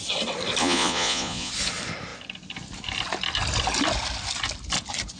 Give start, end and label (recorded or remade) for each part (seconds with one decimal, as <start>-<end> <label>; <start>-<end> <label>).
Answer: 0.0-0.6 recorded; 0.6-1.5 remade; 1.5-5.2 recorded

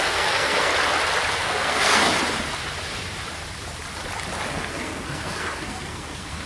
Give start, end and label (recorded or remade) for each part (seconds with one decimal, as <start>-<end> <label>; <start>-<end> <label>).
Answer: 0.0-0.7 remade; 0.7-1.3 recorded; 1.3-2.1 remade; 2.1-4.5 recorded; 4.5-6.5 remade

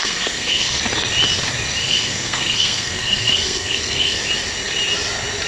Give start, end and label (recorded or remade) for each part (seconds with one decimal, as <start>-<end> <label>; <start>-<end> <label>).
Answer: 0.0-0.8 remade; 0.8-1.8 recorded; 1.8-4.2 remade; 4.2-5.5 recorded

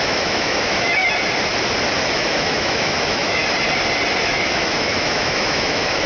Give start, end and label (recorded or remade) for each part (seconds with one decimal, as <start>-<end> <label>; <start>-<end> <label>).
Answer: 0.0-1.0 remade; 1.0-2.0 recorded; 2.0-3.4 remade; 3.4-4.2 recorded; 4.2-6.1 remade

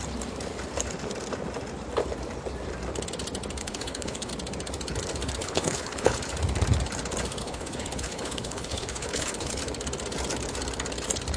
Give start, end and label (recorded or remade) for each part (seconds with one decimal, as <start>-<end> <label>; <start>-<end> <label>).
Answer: 0.0-3.6 recorded; 3.6-4.3 remade; 4.3-5.4 recorded; 5.4-6.2 remade; 6.2-7.4 recorded; 7.4-9.6 remade; 9.6-11.4 recorded